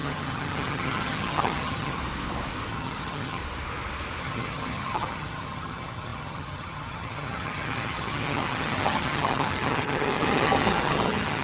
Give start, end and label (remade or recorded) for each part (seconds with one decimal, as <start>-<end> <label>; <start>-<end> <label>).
0.0-2.0 remade; 2.0-2.7 recorded; 2.7-3.4 remade; 3.4-4.2 recorded; 4.2-11.4 remade